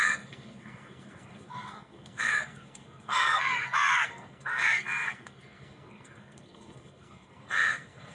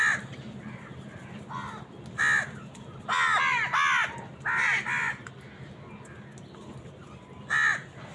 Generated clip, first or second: first